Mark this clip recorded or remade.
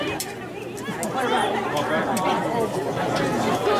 recorded